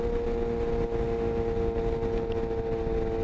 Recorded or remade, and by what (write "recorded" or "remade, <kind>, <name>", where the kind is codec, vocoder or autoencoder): recorded